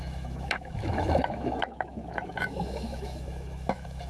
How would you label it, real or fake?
fake